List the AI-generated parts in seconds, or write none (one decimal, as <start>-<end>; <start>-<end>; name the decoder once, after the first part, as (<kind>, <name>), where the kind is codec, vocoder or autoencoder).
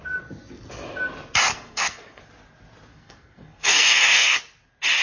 1.5-2.2 (codec, SNAC); 2.9-4.4